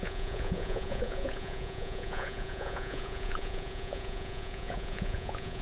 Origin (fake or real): fake